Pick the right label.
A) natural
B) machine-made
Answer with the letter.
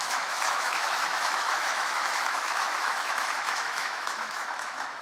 B